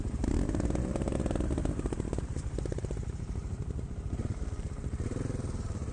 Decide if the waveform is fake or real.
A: fake